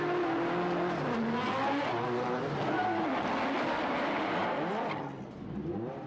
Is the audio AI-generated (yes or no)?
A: no